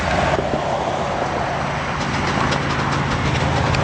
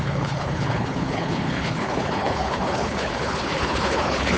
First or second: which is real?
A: first